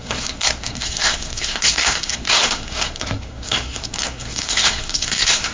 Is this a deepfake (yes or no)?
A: yes